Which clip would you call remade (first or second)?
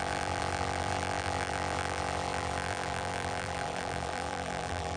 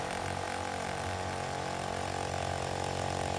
first